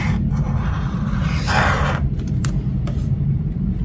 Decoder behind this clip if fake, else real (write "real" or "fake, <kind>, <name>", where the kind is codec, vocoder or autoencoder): fake, vocoder, BigVGAN v2